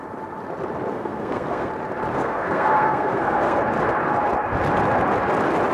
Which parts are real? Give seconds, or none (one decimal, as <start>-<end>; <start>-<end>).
0.0-0.9; 1.7-2.1; 3.6-5.7